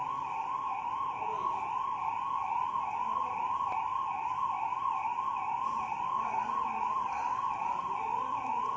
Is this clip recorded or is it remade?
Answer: recorded